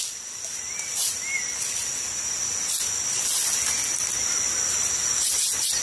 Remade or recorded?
recorded